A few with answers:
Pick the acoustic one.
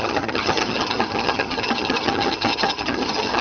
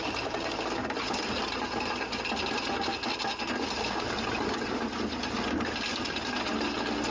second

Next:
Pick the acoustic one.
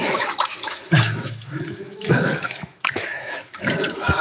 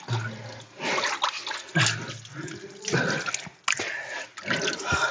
second